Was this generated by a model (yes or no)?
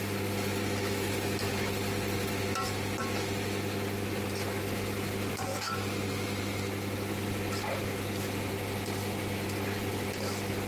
no